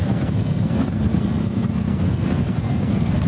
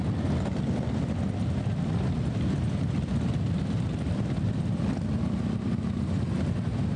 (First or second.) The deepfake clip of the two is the first